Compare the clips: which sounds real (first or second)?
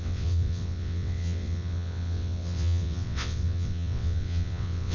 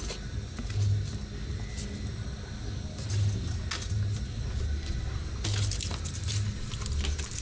second